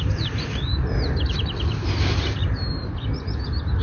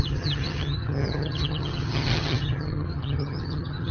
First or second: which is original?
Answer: first